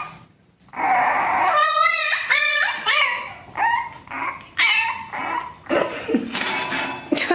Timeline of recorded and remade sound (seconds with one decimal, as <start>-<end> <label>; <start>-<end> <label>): 0.0-1.6 recorded; 1.6-3.0 remade; 3.0-7.3 recorded

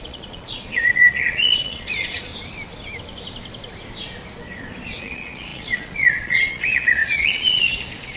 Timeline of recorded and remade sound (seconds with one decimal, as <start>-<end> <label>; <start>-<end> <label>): 0.0-2.3 remade; 2.3-5.0 recorded; 5.0-8.2 remade

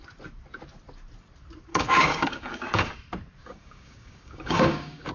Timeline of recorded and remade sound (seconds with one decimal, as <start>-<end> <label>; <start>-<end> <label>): 0.0-1.7 recorded; 1.7-2.9 remade; 2.9-3.4 recorded; 3.4-5.1 remade